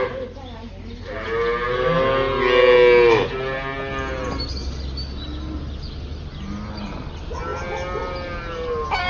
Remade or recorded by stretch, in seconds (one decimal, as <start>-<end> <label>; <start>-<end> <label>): 0.0-9.1 recorded